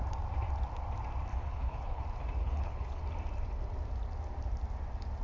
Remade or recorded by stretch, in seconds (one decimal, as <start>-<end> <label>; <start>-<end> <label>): 0.0-1.3 recorded; 1.3-2.0 remade; 2.0-2.4 recorded; 2.4-3.0 remade; 3.0-5.2 recorded